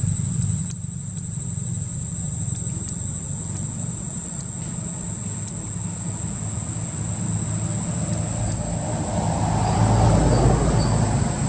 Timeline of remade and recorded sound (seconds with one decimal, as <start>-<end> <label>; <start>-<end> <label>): 0.0-11.5 recorded